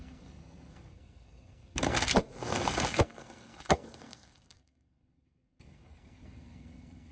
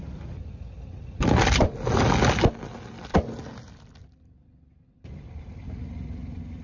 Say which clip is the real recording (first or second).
second